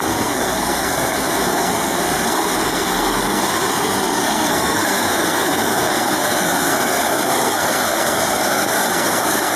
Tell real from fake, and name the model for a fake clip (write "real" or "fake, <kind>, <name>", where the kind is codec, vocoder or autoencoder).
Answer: fake, codec, SNAC